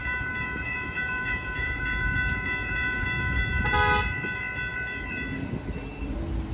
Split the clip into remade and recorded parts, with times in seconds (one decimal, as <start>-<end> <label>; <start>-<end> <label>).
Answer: 0.0-3.6 remade; 3.6-6.5 recorded